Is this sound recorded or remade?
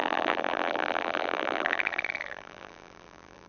remade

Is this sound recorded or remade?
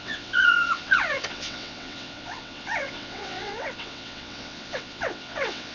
remade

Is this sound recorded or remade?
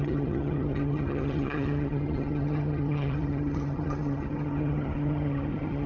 remade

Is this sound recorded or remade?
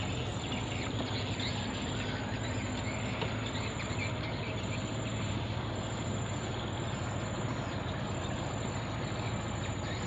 recorded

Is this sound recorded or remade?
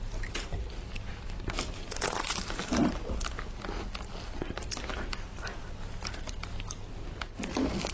recorded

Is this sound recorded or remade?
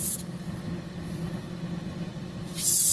recorded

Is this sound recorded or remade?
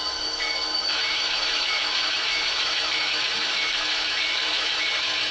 remade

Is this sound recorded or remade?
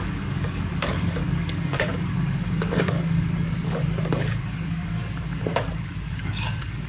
remade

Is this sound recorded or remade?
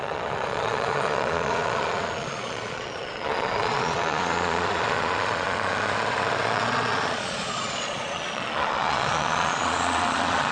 remade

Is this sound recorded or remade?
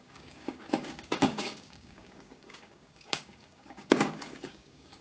remade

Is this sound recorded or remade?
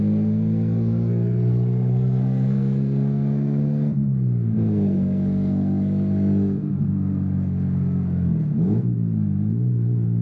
remade